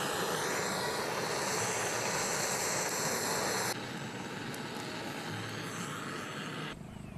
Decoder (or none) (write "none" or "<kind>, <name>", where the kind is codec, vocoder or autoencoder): none